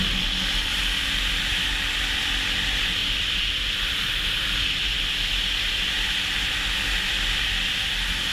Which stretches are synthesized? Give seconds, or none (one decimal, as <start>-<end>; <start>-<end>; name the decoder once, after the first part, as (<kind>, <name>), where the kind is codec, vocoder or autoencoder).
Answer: 3.0-5.0 (vocoder, BigVGAN v2)